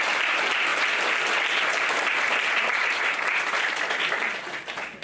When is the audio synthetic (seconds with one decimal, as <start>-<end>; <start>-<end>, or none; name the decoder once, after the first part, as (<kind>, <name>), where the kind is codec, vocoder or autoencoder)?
none